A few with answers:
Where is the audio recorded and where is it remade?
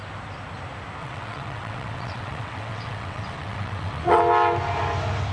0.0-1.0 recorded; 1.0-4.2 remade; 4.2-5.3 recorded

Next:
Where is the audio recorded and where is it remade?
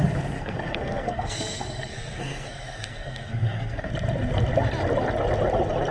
0.0-0.4 recorded; 0.4-3.9 remade; 3.9-5.9 recorded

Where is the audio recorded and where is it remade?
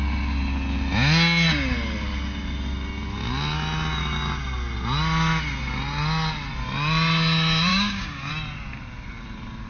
0.0-7.7 recorded; 7.7-8.3 remade; 8.3-9.7 recorded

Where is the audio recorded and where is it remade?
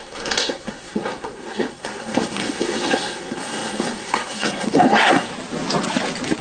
0.0-5.3 remade; 5.3-6.4 recorded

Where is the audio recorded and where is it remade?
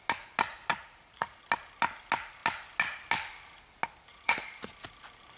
0.0-0.7 recorded; 0.7-1.4 remade; 1.4-4.1 recorded; 4.1-4.7 remade; 4.7-5.4 recorded